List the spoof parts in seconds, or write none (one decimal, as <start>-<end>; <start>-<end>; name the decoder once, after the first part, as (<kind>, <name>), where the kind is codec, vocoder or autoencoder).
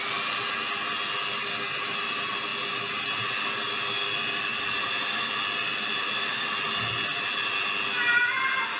none